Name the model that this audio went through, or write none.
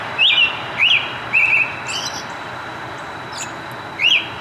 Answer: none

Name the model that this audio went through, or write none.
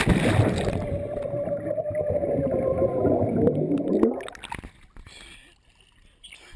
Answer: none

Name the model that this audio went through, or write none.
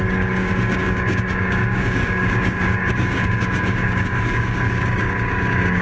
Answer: codec, DAC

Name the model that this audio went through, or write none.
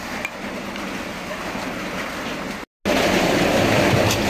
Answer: none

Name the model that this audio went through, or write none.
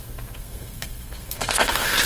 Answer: codec, SNAC